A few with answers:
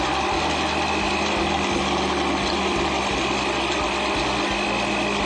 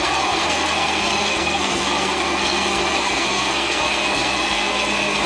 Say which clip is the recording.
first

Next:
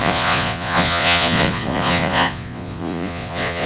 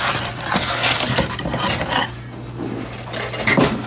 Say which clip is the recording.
second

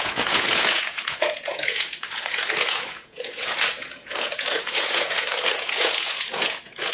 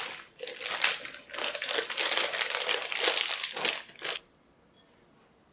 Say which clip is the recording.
second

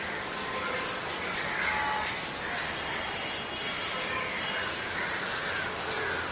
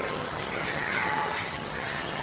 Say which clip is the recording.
first